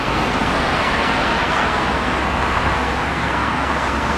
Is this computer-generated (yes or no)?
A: yes